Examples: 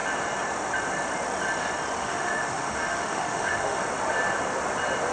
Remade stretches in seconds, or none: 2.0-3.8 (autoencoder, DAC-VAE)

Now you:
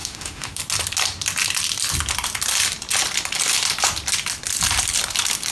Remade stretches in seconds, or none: 0.0-0.6 (autoencoder, DAC-VAE)

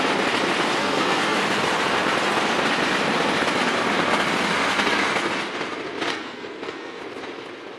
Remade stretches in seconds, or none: 0.8-1.4 (codec, SNAC); 6.1-7.0

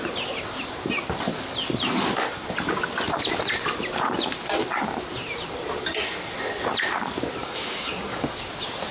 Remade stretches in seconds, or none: 7.4-8.4 (codec, DAC)

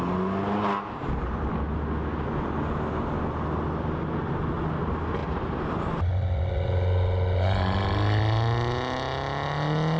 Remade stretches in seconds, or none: none

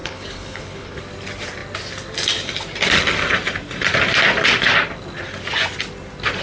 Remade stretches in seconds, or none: 0.0-1.0 (codec, HILCodec)